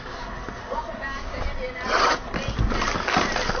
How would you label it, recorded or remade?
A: recorded